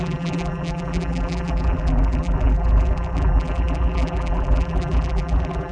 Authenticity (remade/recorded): remade